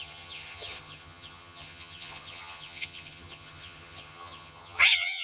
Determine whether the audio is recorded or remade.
remade